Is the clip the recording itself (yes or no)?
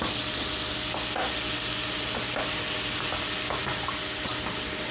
yes